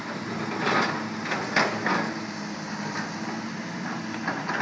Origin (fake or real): real